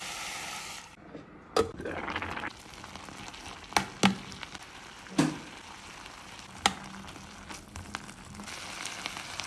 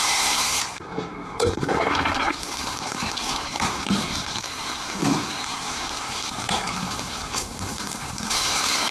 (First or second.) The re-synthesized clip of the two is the second